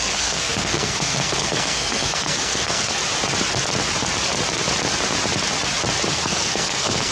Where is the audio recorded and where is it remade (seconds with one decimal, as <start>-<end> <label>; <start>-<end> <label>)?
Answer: 0.0-3.0 remade; 3.0-6.1 recorded; 6.1-7.1 remade